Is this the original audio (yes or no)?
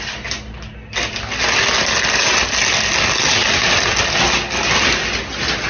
yes